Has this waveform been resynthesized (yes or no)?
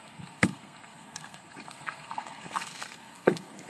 yes